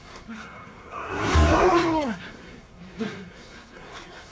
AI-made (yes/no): yes